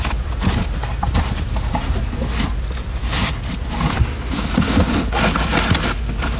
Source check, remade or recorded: recorded